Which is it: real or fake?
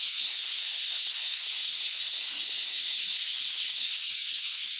fake